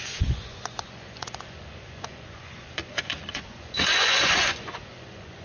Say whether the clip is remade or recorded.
remade